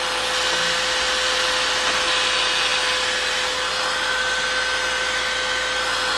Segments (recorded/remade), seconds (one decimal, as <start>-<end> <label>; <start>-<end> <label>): 0.0-6.2 recorded